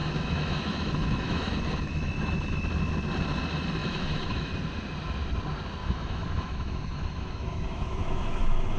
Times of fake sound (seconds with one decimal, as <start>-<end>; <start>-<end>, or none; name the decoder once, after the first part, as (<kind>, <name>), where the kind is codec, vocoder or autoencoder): 0.0-2.6 (autoencoder, DAC-VAE); 3.8-4.5; 5.8-8.8